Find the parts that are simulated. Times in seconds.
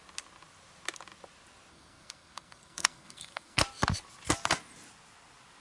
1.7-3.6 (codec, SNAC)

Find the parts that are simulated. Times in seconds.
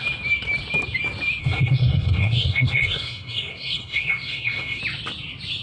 1.4-4.8 (codec, SNAC)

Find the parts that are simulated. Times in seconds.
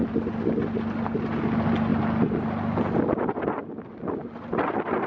none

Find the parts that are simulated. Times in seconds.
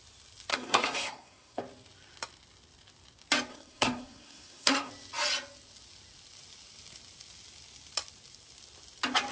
0.5-1.6 (codec, SNAC); 3.5-4.9